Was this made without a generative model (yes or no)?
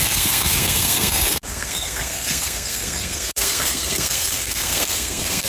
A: no